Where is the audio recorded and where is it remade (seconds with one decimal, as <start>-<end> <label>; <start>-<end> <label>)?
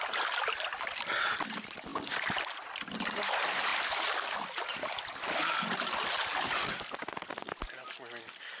0.0-3.7 recorded; 3.7-4.3 remade; 4.3-8.6 recorded